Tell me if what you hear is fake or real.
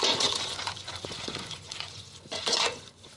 fake